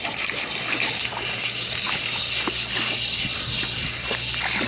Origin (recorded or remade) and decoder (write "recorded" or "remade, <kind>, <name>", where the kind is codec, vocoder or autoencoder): recorded